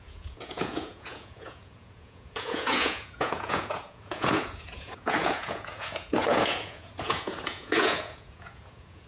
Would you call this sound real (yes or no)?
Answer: no